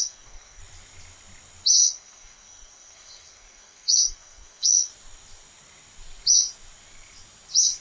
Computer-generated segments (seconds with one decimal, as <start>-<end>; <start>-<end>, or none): 0.0-0.6; 1.8-4.9